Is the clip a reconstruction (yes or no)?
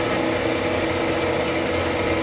no